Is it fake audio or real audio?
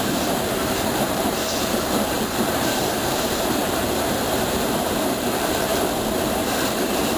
fake